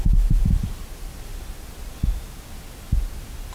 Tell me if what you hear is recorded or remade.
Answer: remade